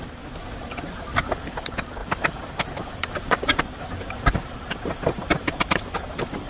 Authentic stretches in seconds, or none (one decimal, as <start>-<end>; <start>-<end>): 0.0-2.0; 5.9-6.5